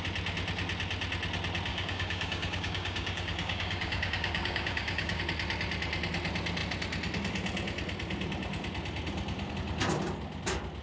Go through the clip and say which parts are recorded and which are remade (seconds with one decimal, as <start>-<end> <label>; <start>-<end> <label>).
0.0-1.7 recorded; 1.7-5.2 remade; 5.2-10.8 recorded